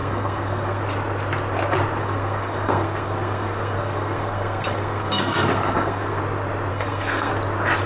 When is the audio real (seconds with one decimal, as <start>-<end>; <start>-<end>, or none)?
0.8-2.0; 6.2-6.7; 7.3-7.9